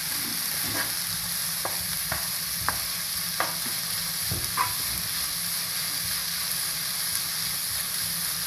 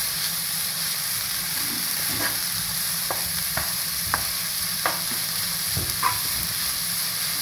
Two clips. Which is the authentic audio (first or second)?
first